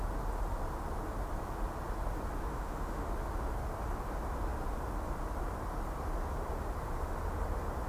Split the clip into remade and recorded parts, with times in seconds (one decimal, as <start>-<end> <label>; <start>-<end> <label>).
0.0-2.5 recorded; 2.5-3.1 remade; 3.1-7.9 recorded